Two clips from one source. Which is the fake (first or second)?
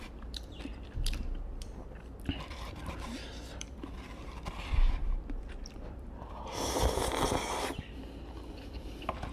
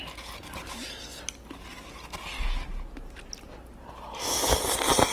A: first